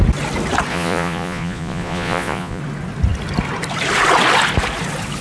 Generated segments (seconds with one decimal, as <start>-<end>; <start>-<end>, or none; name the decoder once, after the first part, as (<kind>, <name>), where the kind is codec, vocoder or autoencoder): 0.7-2.6 (vocoder, Vocos)